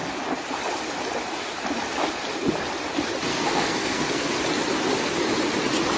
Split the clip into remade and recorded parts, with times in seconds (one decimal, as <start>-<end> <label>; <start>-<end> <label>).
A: 0.0-3.3 recorded; 3.3-4.3 remade; 4.3-6.0 recorded